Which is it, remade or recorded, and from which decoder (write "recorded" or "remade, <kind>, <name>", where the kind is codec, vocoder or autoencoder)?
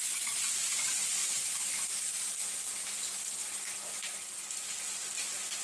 recorded